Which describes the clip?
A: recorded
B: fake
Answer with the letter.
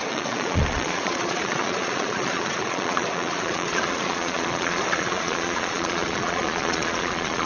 B